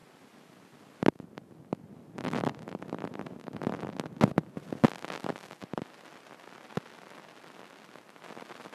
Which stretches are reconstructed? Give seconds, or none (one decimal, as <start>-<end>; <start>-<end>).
none

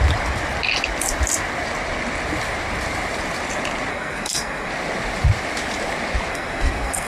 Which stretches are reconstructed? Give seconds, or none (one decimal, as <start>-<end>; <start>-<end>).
3.9-4.7; 6.3-7.1

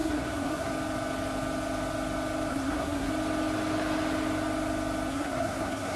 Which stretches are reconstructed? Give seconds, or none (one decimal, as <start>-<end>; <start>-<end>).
0.0-0.7; 2.5-3.1; 5.1-6.0